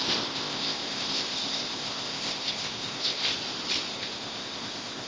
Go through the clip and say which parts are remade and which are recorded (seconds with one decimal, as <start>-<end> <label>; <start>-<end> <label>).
0.0-3.3 remade; 3.3-3.9 recorded; 3.9-5.1 remade